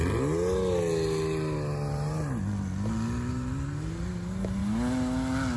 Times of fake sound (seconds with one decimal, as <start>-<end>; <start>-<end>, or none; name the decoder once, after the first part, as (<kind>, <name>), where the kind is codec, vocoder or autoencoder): none